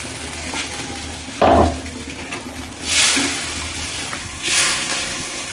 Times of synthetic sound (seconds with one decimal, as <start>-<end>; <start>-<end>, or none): 4.2-5.5